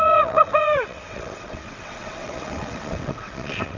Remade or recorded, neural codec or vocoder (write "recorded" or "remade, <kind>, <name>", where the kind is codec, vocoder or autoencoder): remade, vocoder, WaveNeXt